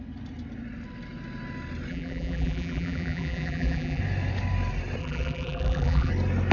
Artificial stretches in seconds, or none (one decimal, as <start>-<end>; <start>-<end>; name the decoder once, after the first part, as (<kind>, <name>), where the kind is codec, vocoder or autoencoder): 1.9-4.0 (vocoder, BigVGAN v2); 5.0-6.1